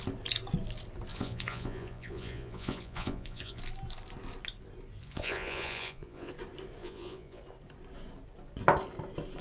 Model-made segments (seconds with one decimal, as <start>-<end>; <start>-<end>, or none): 1.1-3.6; 5.0-6.3; 6.8-7.4